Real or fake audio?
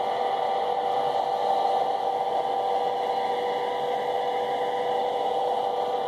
real